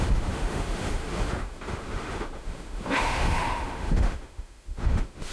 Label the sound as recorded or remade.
remade